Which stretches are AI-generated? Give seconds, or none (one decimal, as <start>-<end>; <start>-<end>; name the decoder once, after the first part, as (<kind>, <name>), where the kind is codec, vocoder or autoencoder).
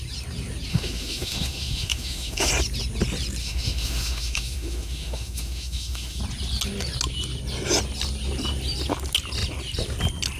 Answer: 0.7-2.5 (autoencoder, DAC-VAE); 3.4-6.2